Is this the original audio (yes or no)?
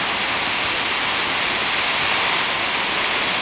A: yes